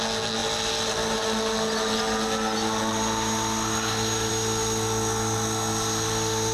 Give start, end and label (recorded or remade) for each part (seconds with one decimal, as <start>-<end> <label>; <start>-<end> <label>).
0.0-6.5 recorded